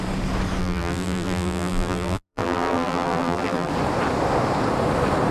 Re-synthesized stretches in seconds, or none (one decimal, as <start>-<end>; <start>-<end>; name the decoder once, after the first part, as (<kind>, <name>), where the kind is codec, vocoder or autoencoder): 0.6-3.7 (vocoder, BigVGAN v2)